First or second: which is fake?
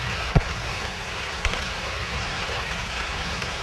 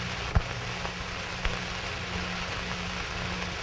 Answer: first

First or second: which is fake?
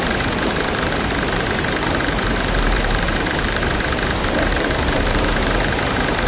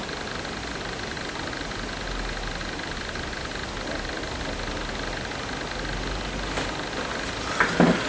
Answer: first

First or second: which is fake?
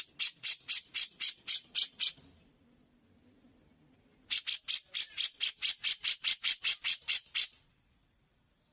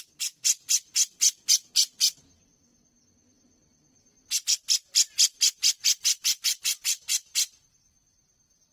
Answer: first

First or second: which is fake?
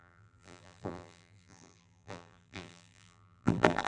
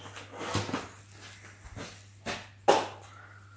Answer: first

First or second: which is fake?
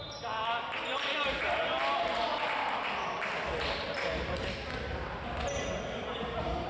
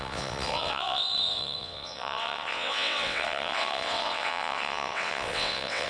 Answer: second